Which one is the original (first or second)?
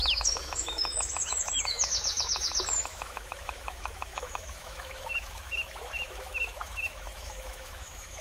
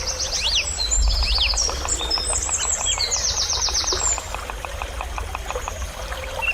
second